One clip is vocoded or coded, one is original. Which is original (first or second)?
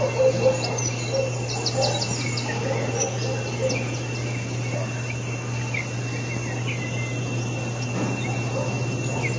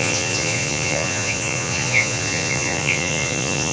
first